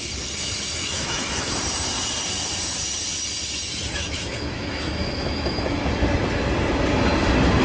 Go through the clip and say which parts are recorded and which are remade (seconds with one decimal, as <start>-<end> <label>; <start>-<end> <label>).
0.0-0.8 recorded; 0.8-1.5 remade; 1.5-3.7 recorded; 3.7-5.9 remade; 5.9-7.6 recorded